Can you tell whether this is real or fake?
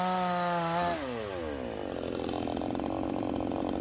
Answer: real